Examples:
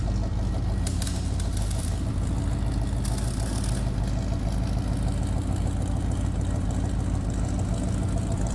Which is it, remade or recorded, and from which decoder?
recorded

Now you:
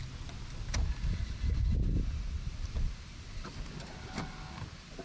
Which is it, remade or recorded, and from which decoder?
recorded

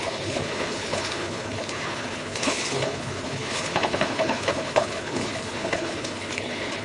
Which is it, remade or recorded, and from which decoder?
remade, codec, HILCodec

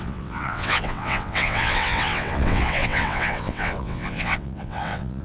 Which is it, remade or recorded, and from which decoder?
remade, vocoder, WaveNeXt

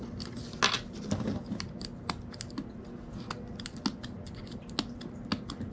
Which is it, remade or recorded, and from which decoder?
recorded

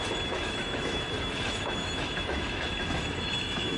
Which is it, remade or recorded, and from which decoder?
remade, autoencoder, DAC-VAE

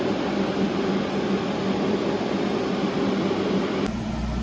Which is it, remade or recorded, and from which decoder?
remade, vocoder, BigVGAN v2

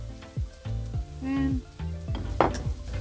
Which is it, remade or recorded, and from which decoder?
recorded